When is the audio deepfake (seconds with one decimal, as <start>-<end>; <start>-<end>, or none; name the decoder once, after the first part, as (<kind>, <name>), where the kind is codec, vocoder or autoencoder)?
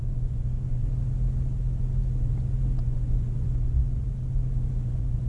0.0-0.8 (vocoder, Vocos); 2.8-3.8; 4.7-5.3